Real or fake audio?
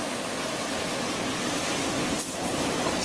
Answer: real